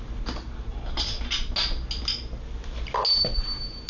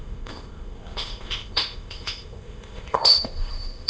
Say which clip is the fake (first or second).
second